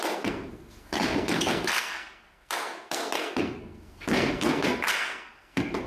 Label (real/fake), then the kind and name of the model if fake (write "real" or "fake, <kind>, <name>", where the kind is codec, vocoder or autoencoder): fake, codec, SNAC